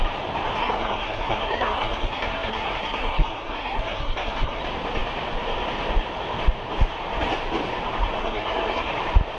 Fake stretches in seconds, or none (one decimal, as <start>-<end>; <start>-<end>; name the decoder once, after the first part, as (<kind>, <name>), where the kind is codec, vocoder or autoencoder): 0.6-4.6 (codec, SNAC); 8.2-8.9